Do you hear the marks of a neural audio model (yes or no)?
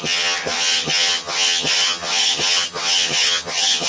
yes